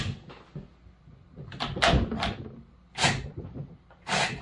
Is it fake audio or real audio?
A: real